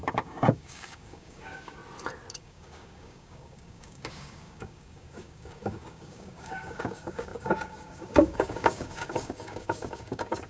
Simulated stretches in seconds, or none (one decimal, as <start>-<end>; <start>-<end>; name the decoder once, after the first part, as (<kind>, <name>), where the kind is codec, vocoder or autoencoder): 0.0-1.8 (codec, DAC); 2.3-10.5